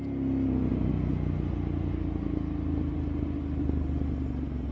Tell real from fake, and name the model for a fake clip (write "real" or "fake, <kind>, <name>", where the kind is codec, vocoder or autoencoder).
real